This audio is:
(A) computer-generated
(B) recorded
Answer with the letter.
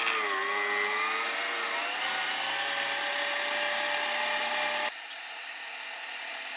B